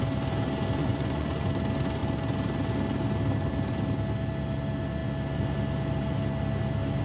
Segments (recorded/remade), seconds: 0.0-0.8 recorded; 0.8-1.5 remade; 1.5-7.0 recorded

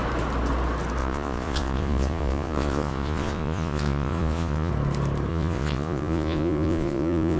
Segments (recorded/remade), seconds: 0.0-1.0 recorded; 1.0-4.7 remade; 4.7-5.3 recorded; 5.3-7.4 remade

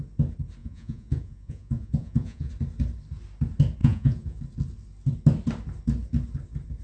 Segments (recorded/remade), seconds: 0.0-0.6 recorded; 0.6-2.5 remade; 2.5-3.8 recorded; 3.8-4.4 remade; 4.4-6.8 recorded

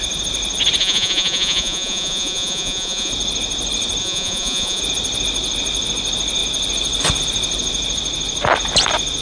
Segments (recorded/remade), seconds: 0.0-0.8 recorded; 0.8-3.1 remade; 3.1-4.0 recorded; 4.0-4.8 remade; 4.8-9.2 recorded

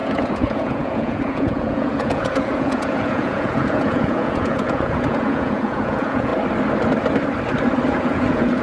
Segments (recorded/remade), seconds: 0.0-6.3 remade; 6.3-7.9 recorded; 7.9-8.6 remade

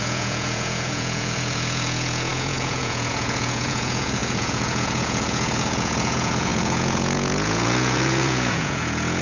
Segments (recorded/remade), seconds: 0.0-9.2 remade

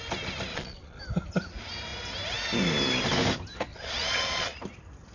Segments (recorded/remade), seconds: 0.0-0.5 recorded; 0.5-1.0 remade; 1.0-3.7 recorded; 3.7-4.6 remade; 4.6-5.1 recorded

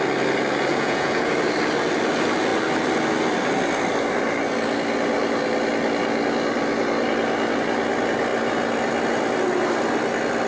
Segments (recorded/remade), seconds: 0.0-0.7 recorded; 0.7-1.3 remade; 1.3-10.5 recorded